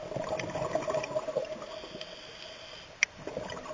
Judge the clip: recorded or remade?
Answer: recorded